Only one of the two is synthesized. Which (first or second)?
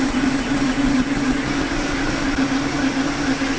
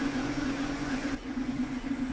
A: second